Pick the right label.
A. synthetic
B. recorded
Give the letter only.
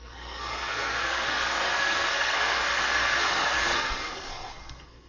A